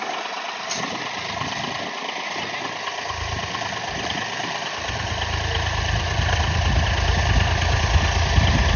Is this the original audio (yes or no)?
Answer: yes